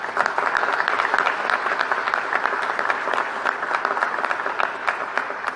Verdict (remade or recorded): recorded